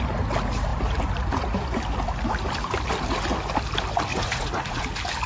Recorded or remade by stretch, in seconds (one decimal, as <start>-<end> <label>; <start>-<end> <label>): 0.0-4.1 recorded; 4.1-4.8 remade; 4.8-5.3 recorded